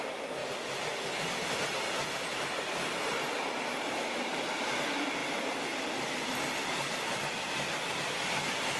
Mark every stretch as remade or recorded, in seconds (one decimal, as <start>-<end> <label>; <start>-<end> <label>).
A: 0.0-8.8 recorded